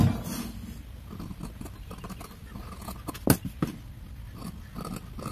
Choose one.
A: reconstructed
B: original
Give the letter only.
B